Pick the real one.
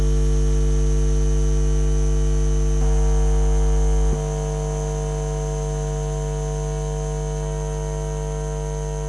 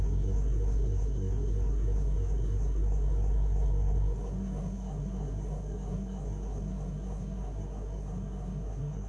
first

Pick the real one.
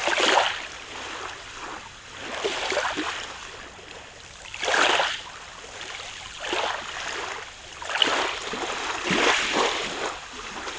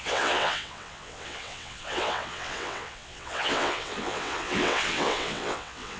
first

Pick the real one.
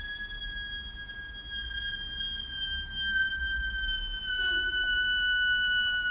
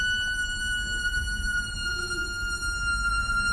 first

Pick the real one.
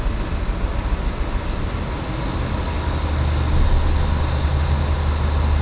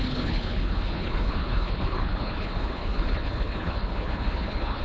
first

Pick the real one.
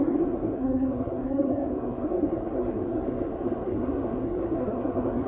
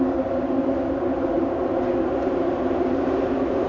second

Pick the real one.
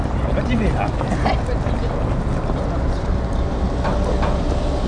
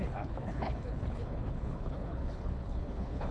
first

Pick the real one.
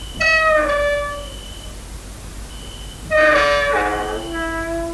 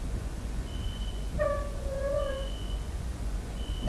first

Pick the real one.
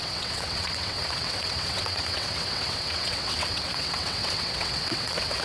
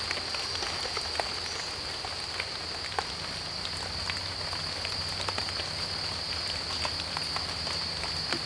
second